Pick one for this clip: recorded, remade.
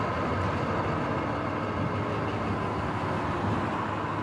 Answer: recorded